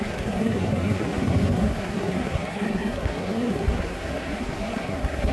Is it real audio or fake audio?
fake